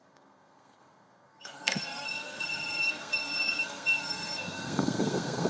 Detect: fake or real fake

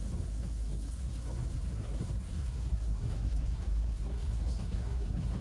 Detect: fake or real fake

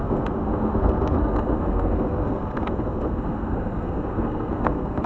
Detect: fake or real fake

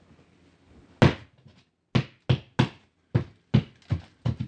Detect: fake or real real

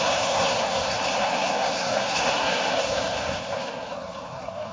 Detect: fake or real fake